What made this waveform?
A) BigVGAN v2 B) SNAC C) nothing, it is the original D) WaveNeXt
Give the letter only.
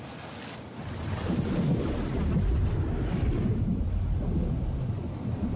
C